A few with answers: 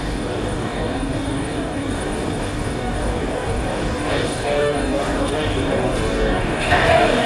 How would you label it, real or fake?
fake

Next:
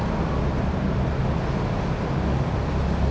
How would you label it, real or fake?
real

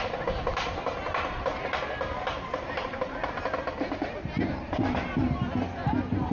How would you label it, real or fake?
real